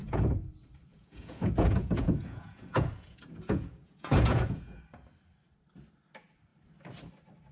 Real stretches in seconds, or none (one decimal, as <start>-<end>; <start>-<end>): 0.5-0.9; 4.8-7.5